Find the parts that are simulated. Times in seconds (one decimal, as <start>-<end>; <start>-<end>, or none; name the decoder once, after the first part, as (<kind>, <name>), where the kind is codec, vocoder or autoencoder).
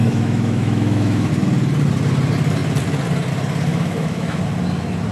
0.0-1.3 (autoencoder, DAC-VAE); 3.7-4.4